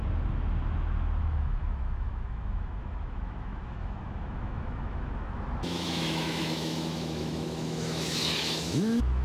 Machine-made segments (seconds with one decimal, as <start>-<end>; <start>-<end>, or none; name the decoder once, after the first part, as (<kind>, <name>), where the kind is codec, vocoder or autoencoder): 1.2-9.2 (autoencoder, DAC-VAE)